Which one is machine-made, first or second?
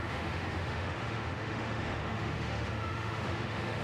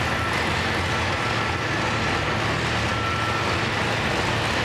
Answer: first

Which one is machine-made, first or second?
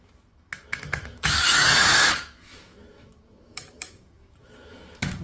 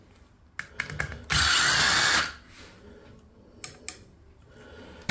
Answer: first